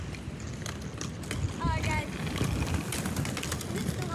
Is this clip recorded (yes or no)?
yes